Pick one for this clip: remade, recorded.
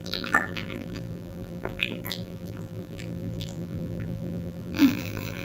remade